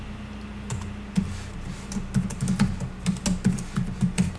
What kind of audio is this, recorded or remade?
recorded